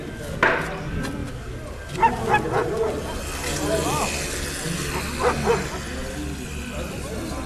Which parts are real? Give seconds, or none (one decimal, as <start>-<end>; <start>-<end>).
0.0-7.5